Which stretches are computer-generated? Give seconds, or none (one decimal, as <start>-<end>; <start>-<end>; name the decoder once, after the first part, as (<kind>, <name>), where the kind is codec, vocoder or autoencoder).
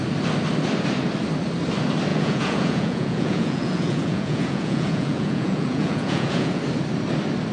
2.1-6.6 (vocoder, Vocos)